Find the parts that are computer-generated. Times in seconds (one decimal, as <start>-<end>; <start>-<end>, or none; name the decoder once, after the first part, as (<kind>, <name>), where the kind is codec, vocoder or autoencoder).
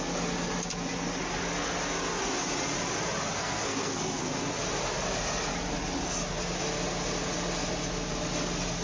3.4-4.2 (codec, SNAC)